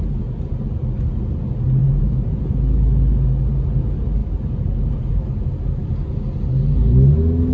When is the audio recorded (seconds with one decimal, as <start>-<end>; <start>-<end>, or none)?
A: 0.0-1.8; 2.4-7.5